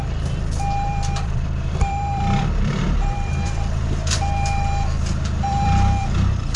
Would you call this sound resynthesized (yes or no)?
yes